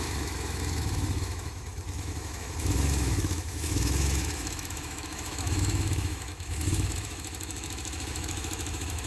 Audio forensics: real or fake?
fake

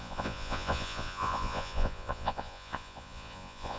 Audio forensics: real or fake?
fake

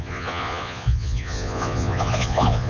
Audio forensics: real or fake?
fake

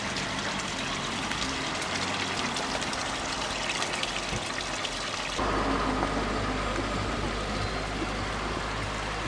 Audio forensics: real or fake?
real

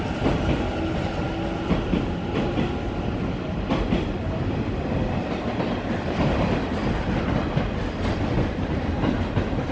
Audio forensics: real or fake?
real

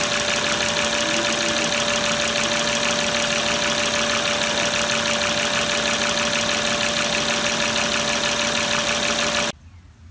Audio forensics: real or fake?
real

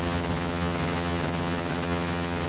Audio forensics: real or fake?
fake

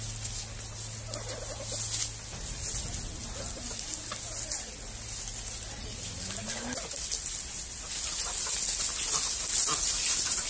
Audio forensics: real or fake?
real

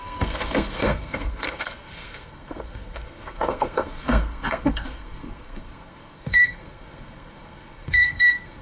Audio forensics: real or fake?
fake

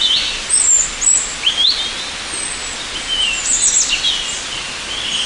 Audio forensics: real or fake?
real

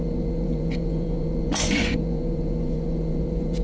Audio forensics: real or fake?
fake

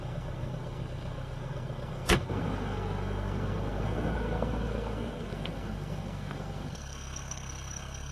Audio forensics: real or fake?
fake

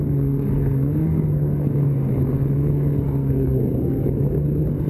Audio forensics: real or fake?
fake